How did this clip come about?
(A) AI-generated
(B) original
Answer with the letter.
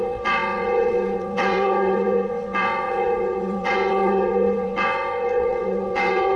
A